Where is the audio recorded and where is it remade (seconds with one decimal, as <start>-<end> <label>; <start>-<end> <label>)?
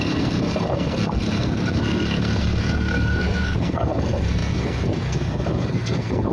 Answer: 0.0-6.3 remade